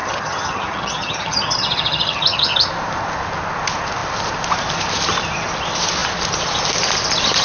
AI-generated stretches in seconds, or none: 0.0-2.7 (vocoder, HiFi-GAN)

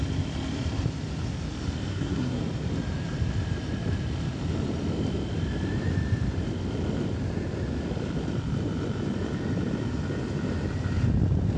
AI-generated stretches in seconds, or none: 1.9-2.4 (codec, SNAC)